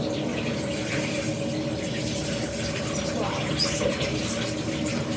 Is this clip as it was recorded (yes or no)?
yes